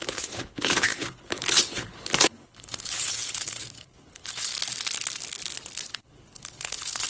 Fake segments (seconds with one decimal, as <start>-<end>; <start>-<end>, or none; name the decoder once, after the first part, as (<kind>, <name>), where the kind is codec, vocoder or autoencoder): 0.0-4.5 (codec, HILCodec); 5.9-7.1